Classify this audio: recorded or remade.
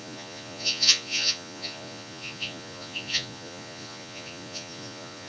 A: remade